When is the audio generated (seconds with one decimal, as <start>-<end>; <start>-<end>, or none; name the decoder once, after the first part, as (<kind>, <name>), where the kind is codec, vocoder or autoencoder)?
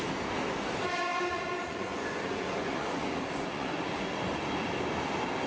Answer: 1.1-4.4 (vocoder, Vocos)